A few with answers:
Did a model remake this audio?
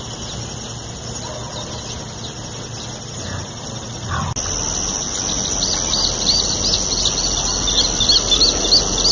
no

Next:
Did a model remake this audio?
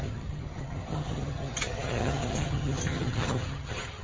yes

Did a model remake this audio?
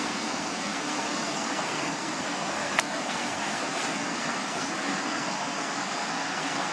yes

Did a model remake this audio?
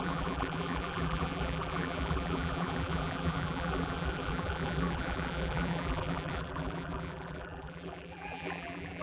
yes